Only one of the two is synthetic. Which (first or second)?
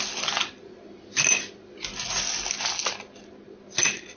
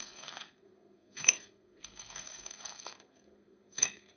second